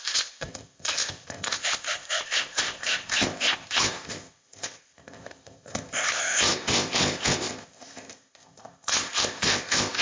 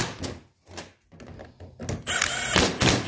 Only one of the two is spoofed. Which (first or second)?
first